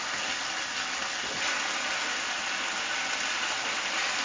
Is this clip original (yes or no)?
yes